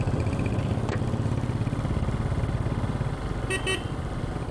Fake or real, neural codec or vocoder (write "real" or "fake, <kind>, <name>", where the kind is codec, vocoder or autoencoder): real